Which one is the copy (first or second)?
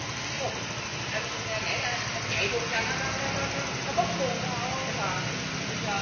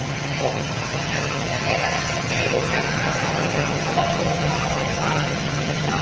second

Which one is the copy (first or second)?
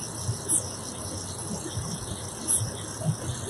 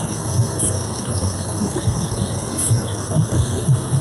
second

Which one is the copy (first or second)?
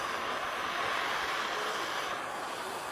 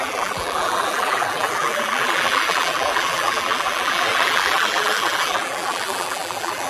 second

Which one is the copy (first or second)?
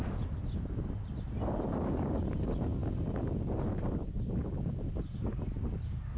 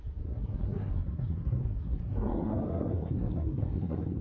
second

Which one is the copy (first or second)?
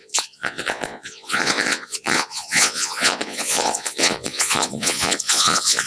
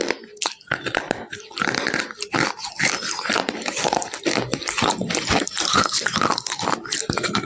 first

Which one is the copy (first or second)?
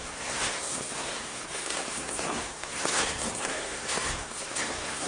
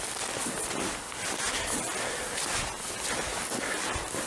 first